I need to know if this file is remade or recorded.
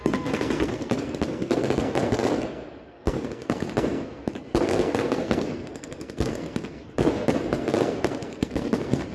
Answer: remade